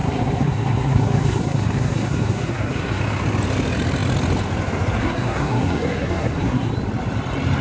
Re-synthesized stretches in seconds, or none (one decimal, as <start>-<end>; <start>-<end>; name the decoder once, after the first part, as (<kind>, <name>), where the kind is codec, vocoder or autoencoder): 0.0-3.0 (codec, SNAC); 5.0-6.7